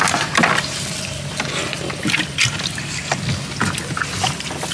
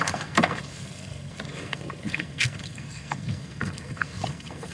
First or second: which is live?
first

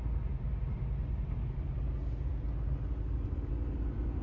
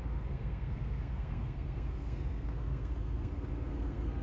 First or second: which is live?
first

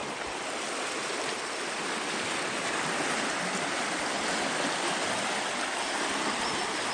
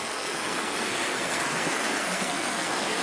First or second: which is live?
first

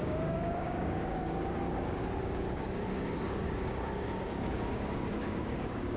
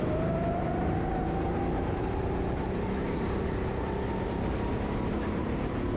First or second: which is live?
second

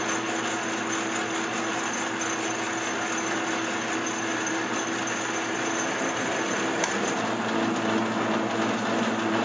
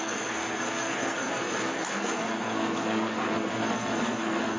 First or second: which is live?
first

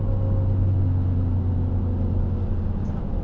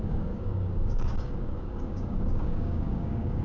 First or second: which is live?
first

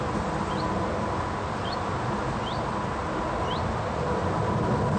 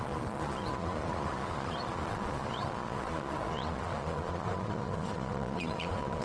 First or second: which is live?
first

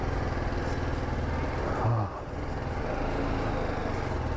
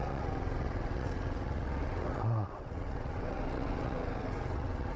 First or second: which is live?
first